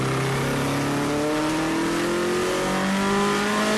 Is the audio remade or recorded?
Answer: recorded